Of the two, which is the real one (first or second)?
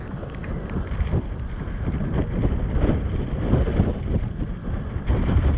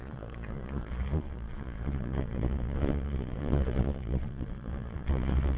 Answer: first